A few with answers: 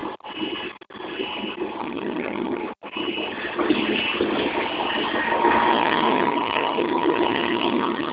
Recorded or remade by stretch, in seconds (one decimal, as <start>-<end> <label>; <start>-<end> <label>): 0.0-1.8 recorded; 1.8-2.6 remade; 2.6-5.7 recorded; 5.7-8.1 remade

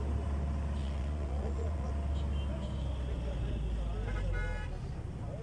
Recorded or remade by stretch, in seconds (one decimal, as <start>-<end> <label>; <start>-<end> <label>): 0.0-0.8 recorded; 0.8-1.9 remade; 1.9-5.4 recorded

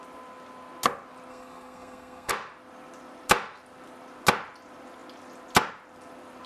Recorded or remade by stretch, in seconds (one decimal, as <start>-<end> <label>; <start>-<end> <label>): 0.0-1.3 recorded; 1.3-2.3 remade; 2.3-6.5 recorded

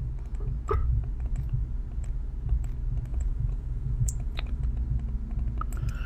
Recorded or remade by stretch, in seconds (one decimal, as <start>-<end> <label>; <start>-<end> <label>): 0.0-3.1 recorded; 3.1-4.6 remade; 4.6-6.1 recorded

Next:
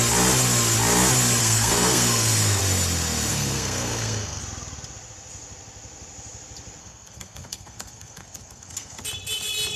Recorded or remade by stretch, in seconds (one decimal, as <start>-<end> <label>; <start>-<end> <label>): 0.0-1.4 recorded; 1.4-2.6 remade; 2.6-3.3 recorded; 3.3-4.4 remade; 4.4-6.8 recorded; 6.8-9.0 remade; 9.0-9.8 recorded

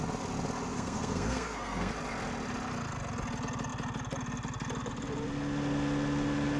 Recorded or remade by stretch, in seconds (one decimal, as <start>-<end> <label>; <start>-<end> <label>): 0.0-0.7 recorded; 0.7-1.9 remade; 1.9-6.6 recorded